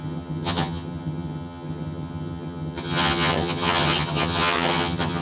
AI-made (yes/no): yes